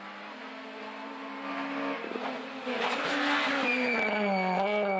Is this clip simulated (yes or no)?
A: no